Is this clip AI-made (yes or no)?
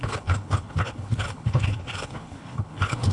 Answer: yes